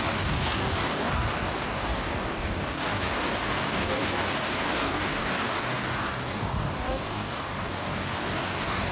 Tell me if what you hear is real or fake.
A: fake